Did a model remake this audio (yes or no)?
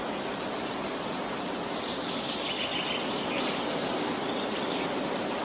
no